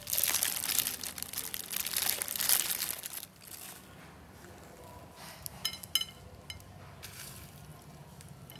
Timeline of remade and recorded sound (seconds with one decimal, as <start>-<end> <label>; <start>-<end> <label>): 0.0-8.6 recorded